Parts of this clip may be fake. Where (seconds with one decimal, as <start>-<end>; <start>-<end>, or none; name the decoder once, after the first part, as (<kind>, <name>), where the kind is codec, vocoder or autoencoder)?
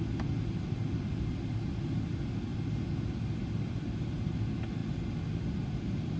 none